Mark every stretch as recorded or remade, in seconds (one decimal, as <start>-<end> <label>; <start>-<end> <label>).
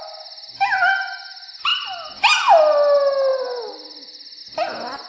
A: 0.0-5.1 recorded